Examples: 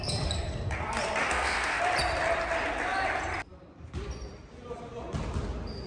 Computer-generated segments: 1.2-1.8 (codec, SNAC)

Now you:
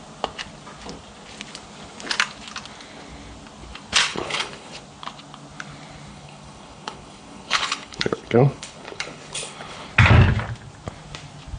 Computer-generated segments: 4.1-4.8 (codec, HILCodec); 6.1-9.9